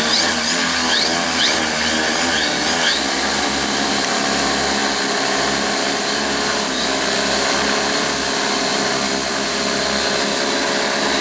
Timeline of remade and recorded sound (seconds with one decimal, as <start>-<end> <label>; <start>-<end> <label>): 0.0-11.2 recorded